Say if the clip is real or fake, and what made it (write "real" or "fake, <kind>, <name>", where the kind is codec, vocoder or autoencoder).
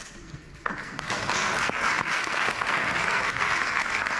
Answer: fake, codec, SNAC